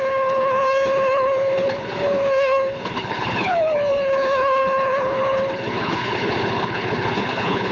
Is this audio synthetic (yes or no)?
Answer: yes